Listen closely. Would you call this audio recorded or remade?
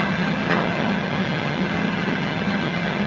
remade